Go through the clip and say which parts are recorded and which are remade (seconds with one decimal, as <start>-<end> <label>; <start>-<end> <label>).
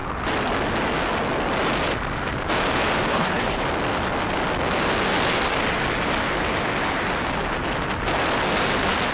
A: 0.0-3.1 recorded; 3.1-3.6 remade; 3.6-9.1 recorded